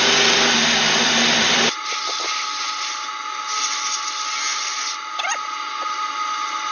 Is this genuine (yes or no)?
yes